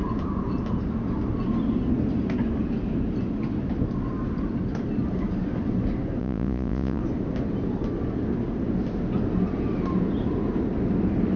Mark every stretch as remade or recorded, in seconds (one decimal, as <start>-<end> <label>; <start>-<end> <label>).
0.0-6.2 recorded; 6.2-7.0 remade; 7.0-11.4 recorded